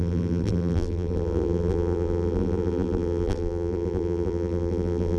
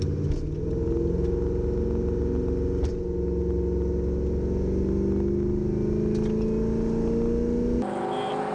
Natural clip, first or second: second